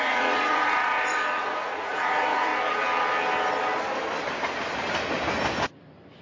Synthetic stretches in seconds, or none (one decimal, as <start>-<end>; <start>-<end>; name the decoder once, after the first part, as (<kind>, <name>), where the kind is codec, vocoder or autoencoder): 0.0-2.5 (vocoder, Vocos)